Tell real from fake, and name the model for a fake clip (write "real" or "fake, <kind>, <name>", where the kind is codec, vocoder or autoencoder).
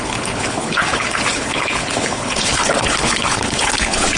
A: fake, codec, HILCodec